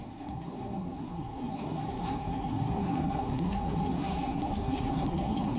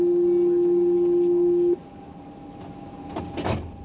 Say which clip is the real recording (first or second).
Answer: second